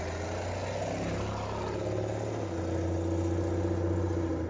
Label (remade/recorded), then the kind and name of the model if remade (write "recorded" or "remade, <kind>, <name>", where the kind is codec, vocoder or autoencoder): recorded